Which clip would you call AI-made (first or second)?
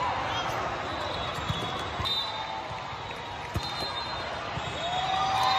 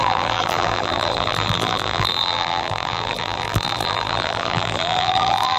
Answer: second